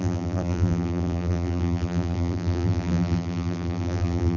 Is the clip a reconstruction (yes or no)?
yes